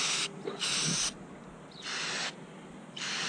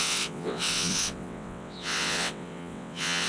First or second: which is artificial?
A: second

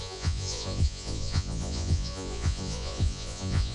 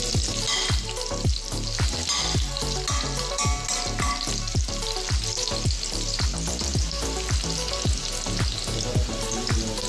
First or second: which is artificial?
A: first